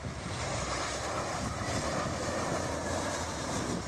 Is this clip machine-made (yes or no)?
yes